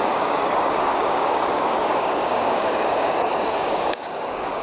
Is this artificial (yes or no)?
yes